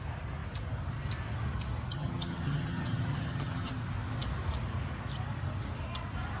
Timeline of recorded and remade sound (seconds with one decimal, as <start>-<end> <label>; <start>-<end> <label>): 0.0-1.9 recorded; 1.9-3.7 remade; 3.7-6.4 recorded